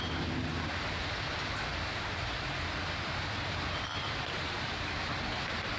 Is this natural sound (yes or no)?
yes